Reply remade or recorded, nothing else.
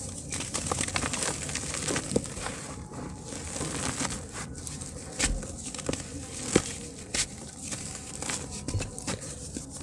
recorded